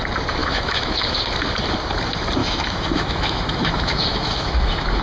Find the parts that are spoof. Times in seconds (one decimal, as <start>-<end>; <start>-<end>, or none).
0.4-1.2; 2.4-5.0